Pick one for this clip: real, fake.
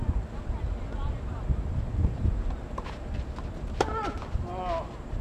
real